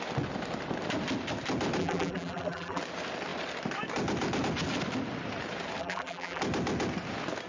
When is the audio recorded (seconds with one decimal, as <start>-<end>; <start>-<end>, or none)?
0.0-1.8; 2.8-5.8; 6.4-7.5